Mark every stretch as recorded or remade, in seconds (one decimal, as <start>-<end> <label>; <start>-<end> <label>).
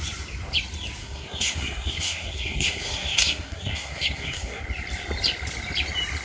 0.0-1.0 recorded; 1.0-4.6 remade; 4.6-6.2 recorded